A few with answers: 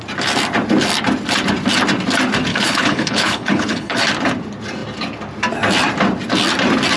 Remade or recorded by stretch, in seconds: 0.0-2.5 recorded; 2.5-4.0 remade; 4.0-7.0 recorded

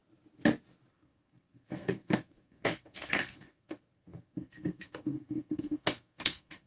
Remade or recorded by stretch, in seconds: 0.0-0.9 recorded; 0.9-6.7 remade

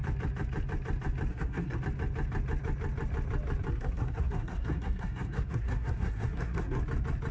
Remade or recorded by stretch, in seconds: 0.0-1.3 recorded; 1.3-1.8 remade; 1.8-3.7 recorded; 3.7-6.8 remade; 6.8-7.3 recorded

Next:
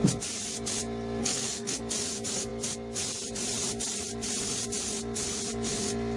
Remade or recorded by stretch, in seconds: 0.0-1.2 recorded; 1.2-1.8 remade; 1.8-6.2 recorded

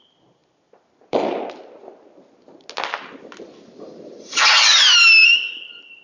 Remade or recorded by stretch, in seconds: 0.0-6.0 recorded

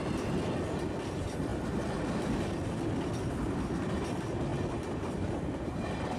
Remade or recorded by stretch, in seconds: 0.0-6.2 recorded

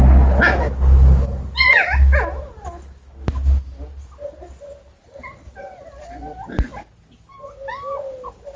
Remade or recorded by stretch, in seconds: 0.0-8.6 recorded

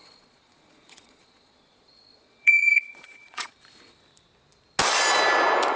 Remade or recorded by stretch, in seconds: 0.0-3.5 remade; 3.5-5.8 recorded